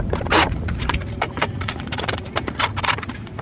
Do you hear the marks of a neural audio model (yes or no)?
yes